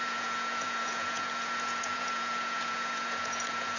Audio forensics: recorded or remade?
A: remade